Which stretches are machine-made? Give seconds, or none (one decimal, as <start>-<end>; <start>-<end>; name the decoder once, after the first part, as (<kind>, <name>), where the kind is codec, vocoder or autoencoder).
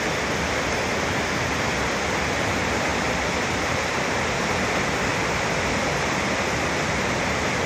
none